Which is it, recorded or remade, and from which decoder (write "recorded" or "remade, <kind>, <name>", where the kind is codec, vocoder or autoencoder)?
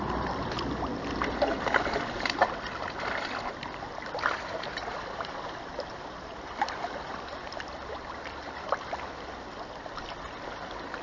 recorded